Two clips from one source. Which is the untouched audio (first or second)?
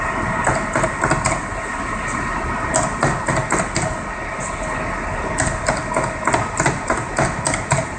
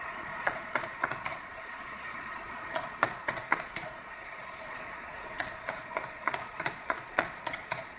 first